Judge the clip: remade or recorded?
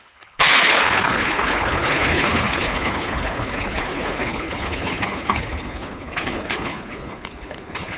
remade